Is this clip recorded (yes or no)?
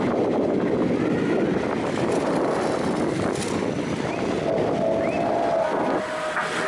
yes